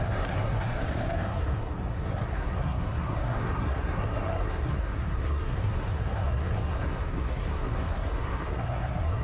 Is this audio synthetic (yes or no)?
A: yes